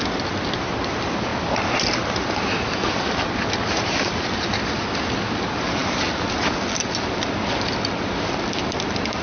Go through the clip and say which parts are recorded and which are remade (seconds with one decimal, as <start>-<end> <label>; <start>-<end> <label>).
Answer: 0.0-9.2 recorded